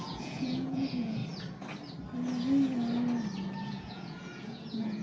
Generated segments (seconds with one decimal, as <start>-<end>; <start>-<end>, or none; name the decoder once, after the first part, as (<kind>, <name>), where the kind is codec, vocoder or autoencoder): 0.0-1.2 (vocoder, Vocos); 3.6-5.0